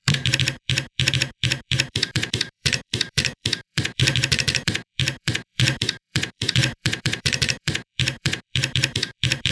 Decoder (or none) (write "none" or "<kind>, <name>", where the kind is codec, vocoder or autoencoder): vocoder, BigVGAN v2